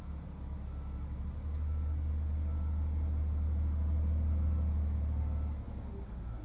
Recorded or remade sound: recorded